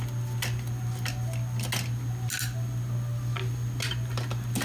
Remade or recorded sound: recorded